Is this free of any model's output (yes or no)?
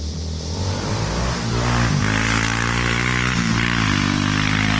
yes